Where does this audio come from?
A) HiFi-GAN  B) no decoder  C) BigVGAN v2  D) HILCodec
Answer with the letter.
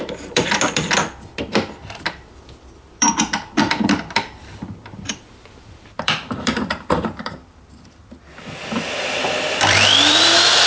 C